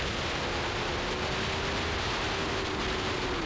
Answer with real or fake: real